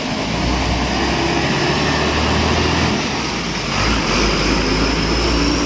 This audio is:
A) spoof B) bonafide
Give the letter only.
B